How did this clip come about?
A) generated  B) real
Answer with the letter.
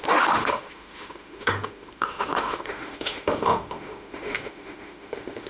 A